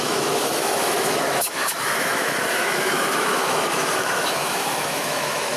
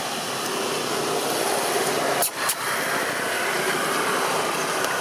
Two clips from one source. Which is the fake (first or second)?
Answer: first